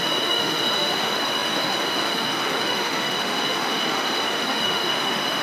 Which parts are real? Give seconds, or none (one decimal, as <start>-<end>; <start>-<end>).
none

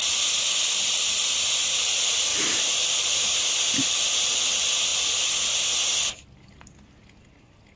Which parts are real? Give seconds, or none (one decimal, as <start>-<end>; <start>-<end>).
1.1-2.3; 4.1-7.8

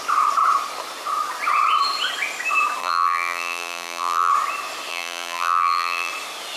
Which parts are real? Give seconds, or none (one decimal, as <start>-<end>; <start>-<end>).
0.0-2.8; 4.3-4.9; 6.1-6.6

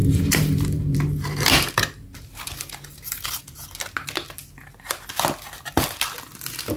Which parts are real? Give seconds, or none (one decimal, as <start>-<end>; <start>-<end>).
3.4-6.8

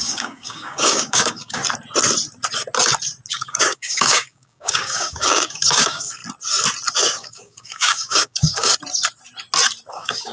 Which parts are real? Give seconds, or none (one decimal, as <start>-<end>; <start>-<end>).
1.6-3.3; 6.2-7.0; 8.7-9.9

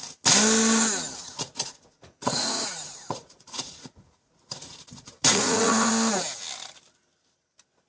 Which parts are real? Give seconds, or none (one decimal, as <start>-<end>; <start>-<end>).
0.0-1.3; 5.9-7.9

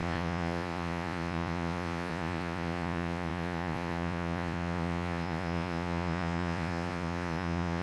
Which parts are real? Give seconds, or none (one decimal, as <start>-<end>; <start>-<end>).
none